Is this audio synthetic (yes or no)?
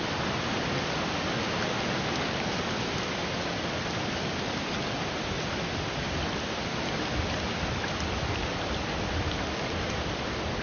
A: no